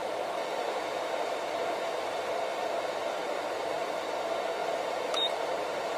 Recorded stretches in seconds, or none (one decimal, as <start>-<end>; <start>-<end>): 0.0-3.2; 4.0-4.6